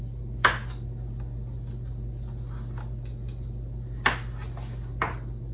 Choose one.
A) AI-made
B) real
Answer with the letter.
B